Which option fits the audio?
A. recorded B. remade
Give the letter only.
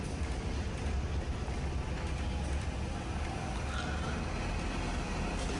A